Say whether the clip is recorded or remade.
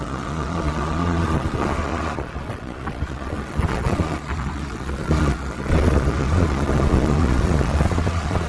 remade